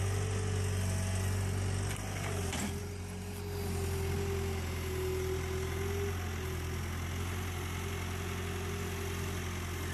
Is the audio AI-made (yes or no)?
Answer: no